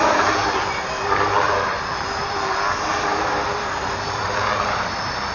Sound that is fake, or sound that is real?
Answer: fake